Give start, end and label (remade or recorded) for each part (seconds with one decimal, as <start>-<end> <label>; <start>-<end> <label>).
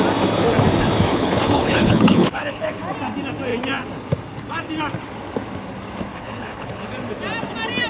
0.0-1.1 recorded; 1.1-2.8 remade; 2.8-6.1 recorded; 6.1-6.8 remade; 6.8-7.9 recorded